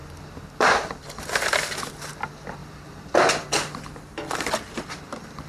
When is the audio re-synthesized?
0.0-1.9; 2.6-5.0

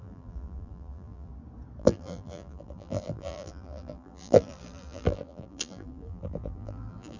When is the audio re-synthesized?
0.0-1.3; 1.8-7.2

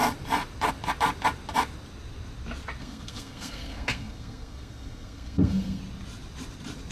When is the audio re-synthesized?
2.8-5.8

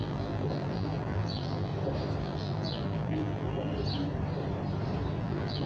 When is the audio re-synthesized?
0.0-1.7; 2.2-3.7; 5.2-5.7